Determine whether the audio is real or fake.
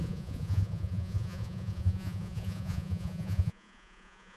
fake